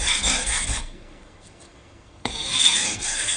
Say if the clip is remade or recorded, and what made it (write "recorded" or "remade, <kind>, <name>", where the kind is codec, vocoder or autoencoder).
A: remade, codec, SNAC